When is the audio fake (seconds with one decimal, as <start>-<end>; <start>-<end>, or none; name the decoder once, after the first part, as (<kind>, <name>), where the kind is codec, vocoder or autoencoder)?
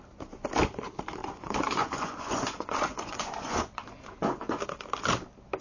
1.2-4.6 (vocoder, Vocos)